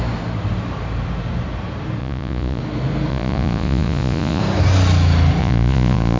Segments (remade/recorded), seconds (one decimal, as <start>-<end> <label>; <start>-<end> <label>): 0.0-2.0 recorded; 2.0-2.6 remade; 2.6-3.1 recorded; 3.1-4.4 remade; 4.4-5.4 recorded; 5.4-6.2 remade